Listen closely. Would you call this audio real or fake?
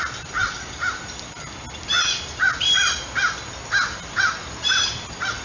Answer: real